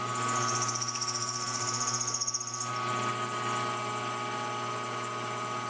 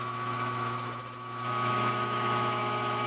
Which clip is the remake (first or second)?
second